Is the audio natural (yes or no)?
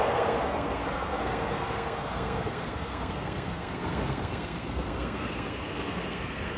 no